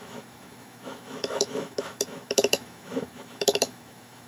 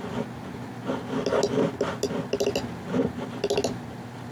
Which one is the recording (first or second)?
second